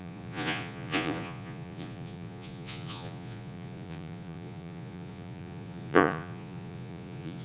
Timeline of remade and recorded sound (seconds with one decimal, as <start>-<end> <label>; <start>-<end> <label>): 0.0-7.4 remade